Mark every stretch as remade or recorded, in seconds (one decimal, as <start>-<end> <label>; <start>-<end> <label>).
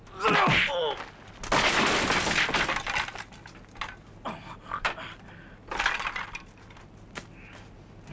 0.0-8.1 recorded